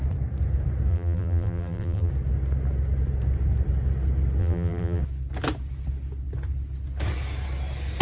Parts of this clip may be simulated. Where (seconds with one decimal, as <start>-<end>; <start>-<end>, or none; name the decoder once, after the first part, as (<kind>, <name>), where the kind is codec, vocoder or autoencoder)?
0.9-2.1 (vocoder, BigVGAN v2); 4.4-5.0

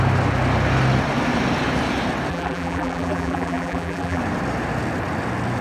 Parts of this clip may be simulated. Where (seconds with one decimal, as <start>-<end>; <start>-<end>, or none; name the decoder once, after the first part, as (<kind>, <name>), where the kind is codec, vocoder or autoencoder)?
2.3-4.2 (vocoder, BigVGAN v2)